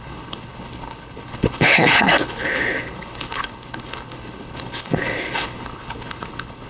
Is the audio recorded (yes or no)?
no